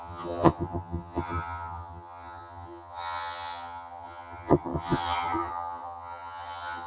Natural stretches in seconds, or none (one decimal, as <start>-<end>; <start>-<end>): none